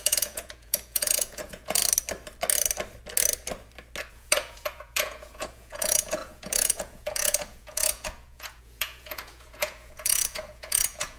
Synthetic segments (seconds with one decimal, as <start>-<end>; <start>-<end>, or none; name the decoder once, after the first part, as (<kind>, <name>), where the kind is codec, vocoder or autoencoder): 0.0-1.8 (vocoder, Vocos); 4.1-11.2